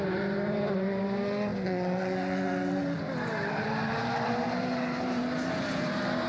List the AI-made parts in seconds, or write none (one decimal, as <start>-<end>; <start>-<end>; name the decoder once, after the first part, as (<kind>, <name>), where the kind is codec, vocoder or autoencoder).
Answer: 0.0-1.5 (vocoder, BigVGAN v2); 3.5-6.3